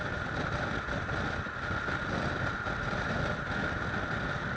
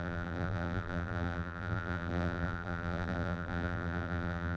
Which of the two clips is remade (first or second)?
second